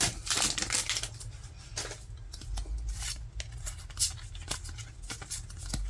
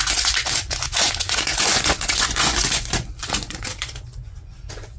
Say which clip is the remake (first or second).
second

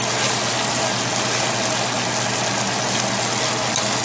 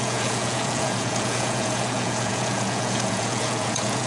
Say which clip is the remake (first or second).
second